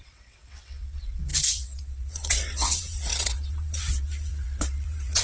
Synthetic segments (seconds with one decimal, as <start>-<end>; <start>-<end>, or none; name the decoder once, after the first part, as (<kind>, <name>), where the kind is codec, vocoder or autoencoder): 0.0-5.2 (vocoder, WaveNeXt)